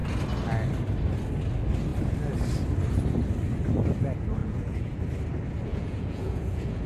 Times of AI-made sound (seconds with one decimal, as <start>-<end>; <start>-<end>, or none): 4.4-5.0; 5.7-6.9